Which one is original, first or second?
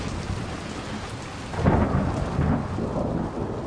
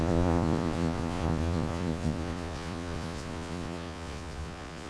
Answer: first